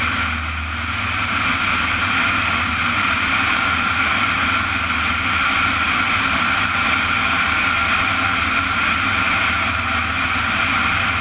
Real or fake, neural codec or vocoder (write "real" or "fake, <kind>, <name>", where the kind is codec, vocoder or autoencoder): real